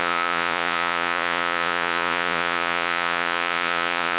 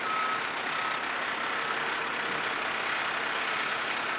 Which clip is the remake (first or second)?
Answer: first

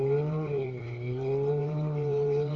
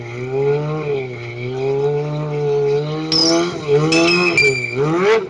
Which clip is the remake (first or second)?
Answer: first